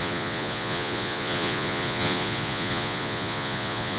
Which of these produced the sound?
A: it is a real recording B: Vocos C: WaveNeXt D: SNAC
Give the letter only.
B